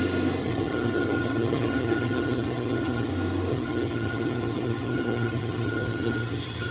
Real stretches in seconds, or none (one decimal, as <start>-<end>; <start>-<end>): 0.0-0.4; 3.1-3.5